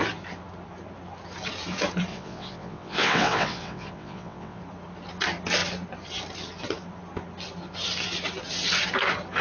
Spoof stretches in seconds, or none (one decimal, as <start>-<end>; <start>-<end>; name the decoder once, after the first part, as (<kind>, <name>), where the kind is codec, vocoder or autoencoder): 2.1-4.6 (vocoder, WaveNeXt)